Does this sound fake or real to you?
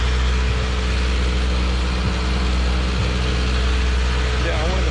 real